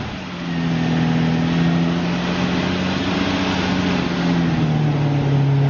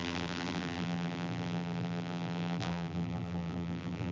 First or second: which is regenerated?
second